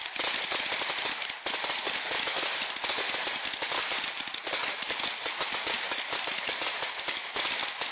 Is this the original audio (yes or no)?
yes